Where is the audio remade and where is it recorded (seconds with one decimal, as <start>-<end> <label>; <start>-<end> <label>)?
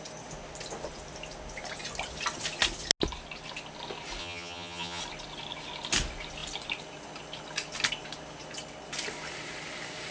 0.0-4.2 recorded; 4.2-5.0 remade; 5.0-10.1 recorded